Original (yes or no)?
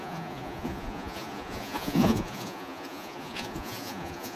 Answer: no